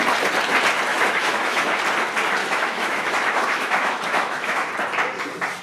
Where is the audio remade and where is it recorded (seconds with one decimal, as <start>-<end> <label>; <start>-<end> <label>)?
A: 0.0-0.9 recorded; 0.9-1.7 remade; 1.7-2.4 recorded; 2.4-4.7 remade; 4.7-5.6 recorded